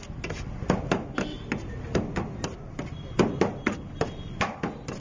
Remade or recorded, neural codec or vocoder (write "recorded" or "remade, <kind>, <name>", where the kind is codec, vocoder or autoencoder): recorded